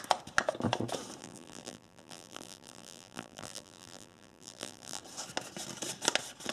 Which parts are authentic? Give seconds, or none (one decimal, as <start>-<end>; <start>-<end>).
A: 0.0-1.2; 5.0-6.5